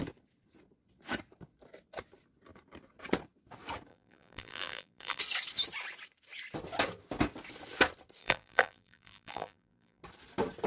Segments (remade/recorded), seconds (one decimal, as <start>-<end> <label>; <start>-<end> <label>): 0.0-3.9 recorded; 3.9-5.2 remade; 5.2-8.2 recorded; 8.2-10.0 remade; 10.0-10.7 recorded